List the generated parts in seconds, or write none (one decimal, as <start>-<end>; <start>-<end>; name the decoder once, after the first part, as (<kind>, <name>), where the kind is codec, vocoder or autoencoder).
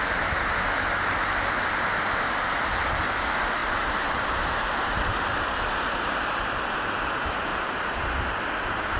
3.6-6.1 (vocoder, BigVGAN v2); 7.5-8.3